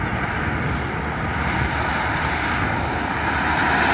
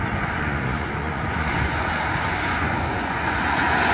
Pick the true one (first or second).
first